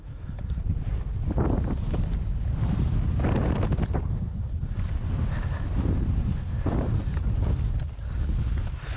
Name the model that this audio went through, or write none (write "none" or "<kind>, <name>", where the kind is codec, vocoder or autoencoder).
none